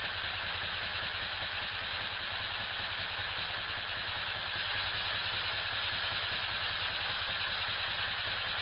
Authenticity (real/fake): real